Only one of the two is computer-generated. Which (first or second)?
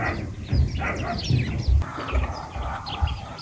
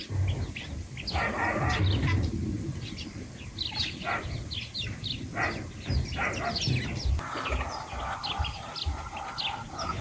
first